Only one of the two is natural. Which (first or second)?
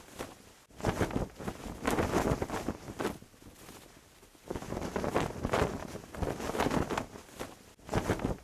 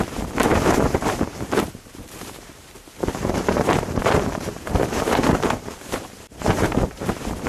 first